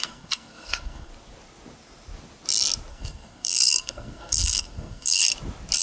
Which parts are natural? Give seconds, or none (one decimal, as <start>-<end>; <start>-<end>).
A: 1.1-2.9; 5.2-5.8